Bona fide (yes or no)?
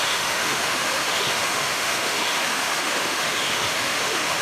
no